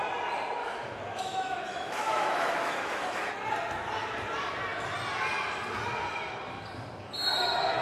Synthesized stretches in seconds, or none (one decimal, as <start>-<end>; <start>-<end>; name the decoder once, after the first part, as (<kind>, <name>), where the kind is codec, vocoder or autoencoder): 0.6-3.3 (autoencoder, DAC-VAE)